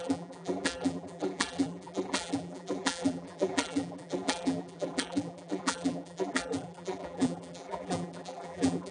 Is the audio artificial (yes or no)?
yes